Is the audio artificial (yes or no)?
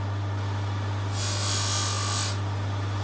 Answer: no